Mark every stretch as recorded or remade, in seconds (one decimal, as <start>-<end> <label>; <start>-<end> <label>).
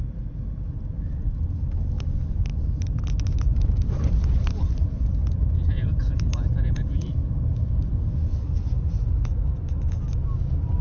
0.0-2.5 recorded; 2.5-5.1 remade; 5.1-10.8 recorded